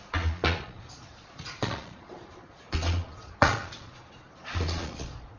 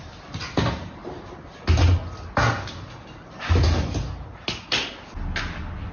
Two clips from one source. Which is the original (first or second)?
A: second